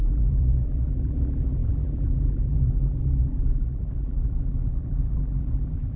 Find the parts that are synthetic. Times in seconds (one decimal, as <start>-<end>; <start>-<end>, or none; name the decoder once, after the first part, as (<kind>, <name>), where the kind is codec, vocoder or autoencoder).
0.0-6.0 (vocoder, BigVGAN v2)